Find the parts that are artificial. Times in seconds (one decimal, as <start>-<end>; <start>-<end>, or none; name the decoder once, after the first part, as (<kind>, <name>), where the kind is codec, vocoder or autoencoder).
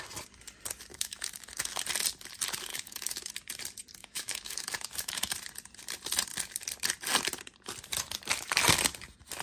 0.9-1.7 (autoencoder, DAC-VAE); 2.7-3.3; 4.0-5.2